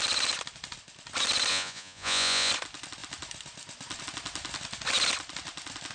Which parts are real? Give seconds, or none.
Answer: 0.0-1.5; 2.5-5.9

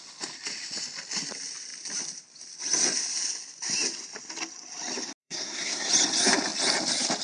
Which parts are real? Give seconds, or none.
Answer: 0.0-5.2; 5.9-7.2

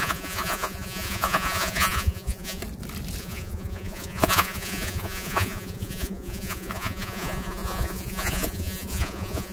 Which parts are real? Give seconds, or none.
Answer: 2.6-3.2

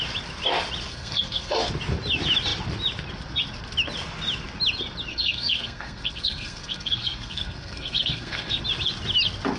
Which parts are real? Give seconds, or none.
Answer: 0.0-0.9; 1.7-5.1; 8.6-9.6

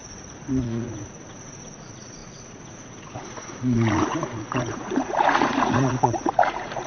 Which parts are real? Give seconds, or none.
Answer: 0.0-0.5

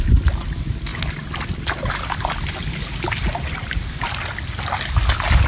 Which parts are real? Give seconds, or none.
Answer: 0.0-5.5

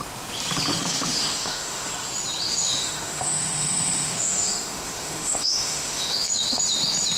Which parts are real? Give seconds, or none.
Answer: 0.0-0.7; 1.9-2.5; 6.6-7.2